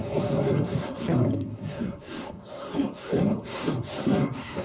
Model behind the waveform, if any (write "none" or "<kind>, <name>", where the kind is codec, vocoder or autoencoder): codec, SNAC